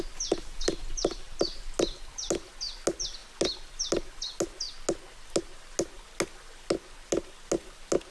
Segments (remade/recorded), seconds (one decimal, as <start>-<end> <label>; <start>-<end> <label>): 0.0-8.1 recorded